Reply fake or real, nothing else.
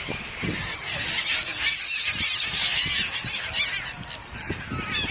real